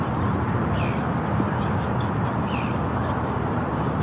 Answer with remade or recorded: recorded